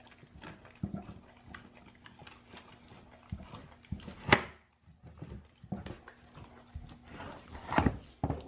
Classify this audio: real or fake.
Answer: real